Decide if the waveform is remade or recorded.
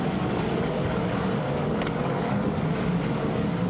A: remade